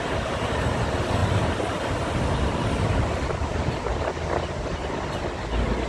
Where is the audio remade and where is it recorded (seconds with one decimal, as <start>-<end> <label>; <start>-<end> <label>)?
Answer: 0.0-1.2 recorded; 1.2-3.8 remade; 3.8-5.9 recorded